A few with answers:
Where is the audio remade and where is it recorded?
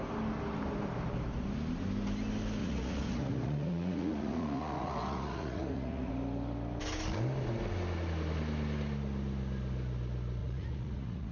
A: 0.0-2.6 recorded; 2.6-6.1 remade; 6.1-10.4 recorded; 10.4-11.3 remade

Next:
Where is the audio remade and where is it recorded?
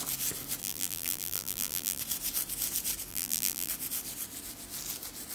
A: 0.0-0.6 recorded; 0.6-2.0 remade; 2.0-3.1 recorded; 3.1-3.7 remade; 3.7-5.3 recorded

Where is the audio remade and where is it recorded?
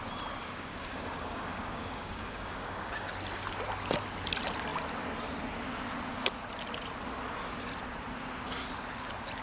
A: 0.0-0.4 recorded; 0.4-3.1 remade; 3.1-9.4 recorded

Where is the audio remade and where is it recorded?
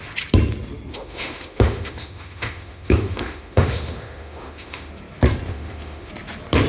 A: 0.0-0.9 recorded; 0.9-4.9 remade; 4.9-5.5 recorded; 5.5-6.1 remade; 6.1-6.7 recorded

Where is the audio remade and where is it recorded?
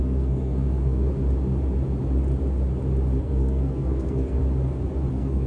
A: 0.0-1.1 remade; 1.1-3.2 recorded; 3.2-4.4 remade; 4.4-5.1 recorded; 5.1-5.5 remade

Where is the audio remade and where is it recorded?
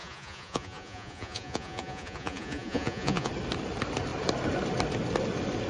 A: 0.0-3.3 remade; 3.3-5.7 recorded